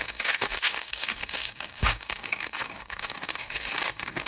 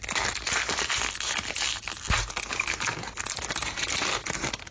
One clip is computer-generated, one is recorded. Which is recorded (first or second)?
second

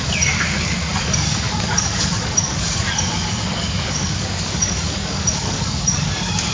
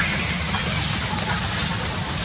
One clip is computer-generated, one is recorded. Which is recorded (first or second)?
second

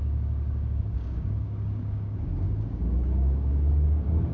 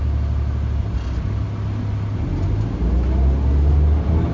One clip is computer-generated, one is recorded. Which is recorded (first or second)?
second